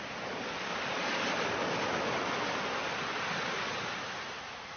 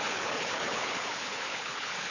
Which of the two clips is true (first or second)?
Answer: first